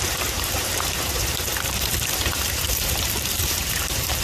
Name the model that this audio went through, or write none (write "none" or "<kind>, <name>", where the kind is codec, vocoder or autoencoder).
vocoder, BigVGAN v2